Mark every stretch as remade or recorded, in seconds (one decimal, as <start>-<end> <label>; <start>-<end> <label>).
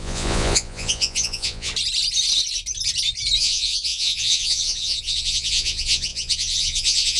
0.0-1.7 remade; 1.7-3.4 recorded; 3.4-7.2 remade